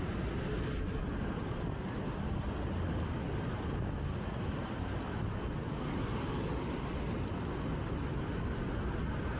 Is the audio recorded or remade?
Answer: recorded